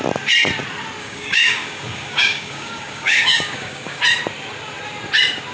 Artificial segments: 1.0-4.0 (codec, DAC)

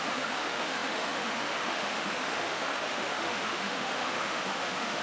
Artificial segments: 0.0-5.0 (autoencoder, DAC-VAE)